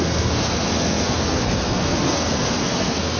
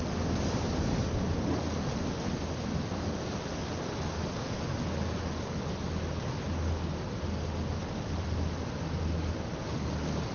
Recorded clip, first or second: second